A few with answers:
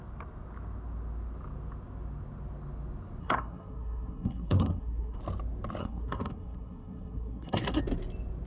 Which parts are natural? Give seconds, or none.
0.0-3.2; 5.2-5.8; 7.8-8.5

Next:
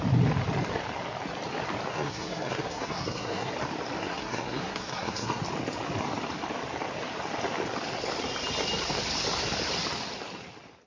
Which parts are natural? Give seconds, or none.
0.0-1.9; 3.5-4.0; 5.4-10.9

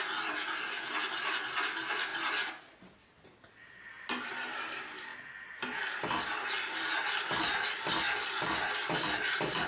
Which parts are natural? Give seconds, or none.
0.0-9.7

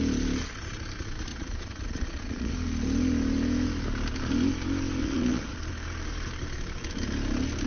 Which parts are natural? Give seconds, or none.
0.0-1.3; 2.5-5.0; 5.6-7.7